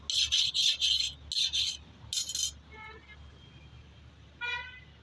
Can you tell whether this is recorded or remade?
recorded